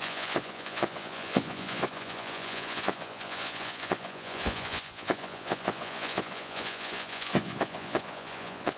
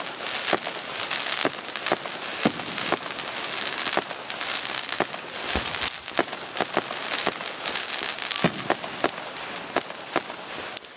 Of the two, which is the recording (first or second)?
second